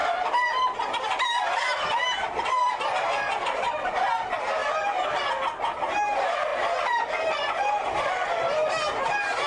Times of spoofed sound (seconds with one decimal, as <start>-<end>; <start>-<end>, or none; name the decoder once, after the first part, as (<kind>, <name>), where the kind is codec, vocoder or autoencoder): 0.0-3.7 (vocoder, BigVGAN v2); 6.5-8.1